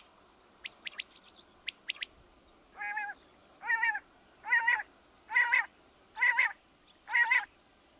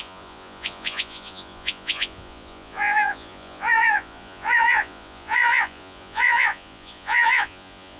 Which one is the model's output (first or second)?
second